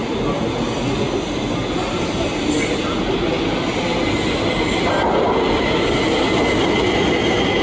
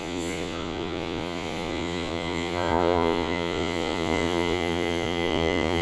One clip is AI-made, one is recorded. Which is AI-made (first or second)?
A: second